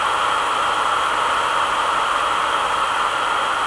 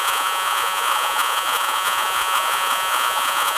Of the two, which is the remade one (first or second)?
second